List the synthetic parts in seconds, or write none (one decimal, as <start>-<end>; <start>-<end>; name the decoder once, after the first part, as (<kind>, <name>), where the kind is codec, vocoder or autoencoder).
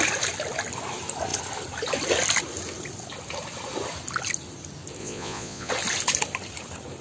5.0-5.7 (vocoder, Vocos)